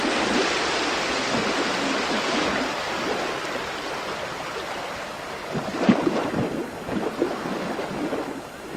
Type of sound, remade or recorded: recorded